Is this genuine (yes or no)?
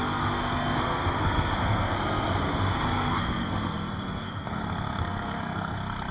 no